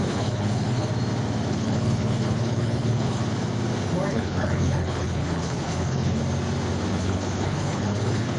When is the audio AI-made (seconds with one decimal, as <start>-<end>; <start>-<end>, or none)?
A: 0.0-0.9; 1.5-3.2; 4.1-6.2; 6.9-8.4

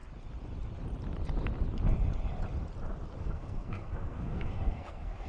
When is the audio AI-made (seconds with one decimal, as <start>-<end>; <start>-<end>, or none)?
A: 3.2-5.3

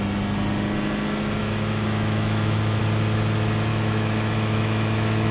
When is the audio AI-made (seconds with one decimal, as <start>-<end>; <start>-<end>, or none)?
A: 1.4-2.8; 3.7-5.3

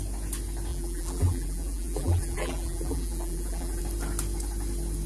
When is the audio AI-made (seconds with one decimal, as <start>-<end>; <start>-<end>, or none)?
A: 0.7-3.8

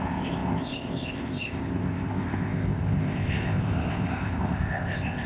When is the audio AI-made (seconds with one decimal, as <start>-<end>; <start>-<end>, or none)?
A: 0.0-5.3

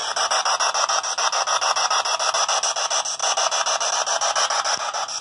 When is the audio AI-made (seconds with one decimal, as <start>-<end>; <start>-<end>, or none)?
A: none

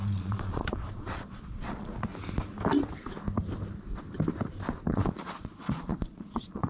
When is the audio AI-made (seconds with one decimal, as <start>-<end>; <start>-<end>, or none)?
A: 0.0-2.1; 4.9-6.7